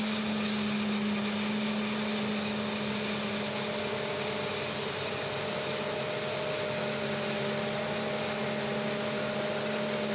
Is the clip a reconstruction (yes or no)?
no